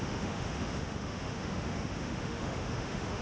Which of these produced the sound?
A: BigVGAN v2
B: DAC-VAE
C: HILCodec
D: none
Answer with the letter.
B